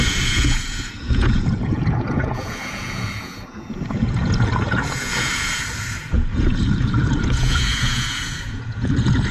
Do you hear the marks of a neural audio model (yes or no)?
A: yes